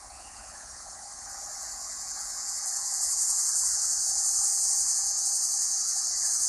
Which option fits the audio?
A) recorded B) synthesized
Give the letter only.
B